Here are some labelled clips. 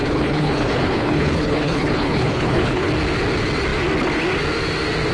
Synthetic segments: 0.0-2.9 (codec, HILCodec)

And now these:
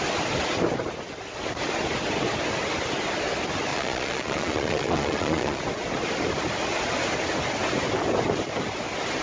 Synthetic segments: 3.7-5.6 (vocoder, Vocos)

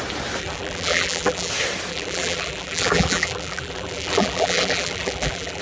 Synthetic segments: 0.4-1.5 (vocoder, BigVGAN v2); 1.9-5.6

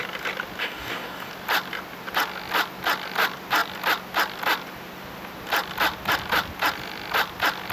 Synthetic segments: 0.6-1.3 (codec, DAC)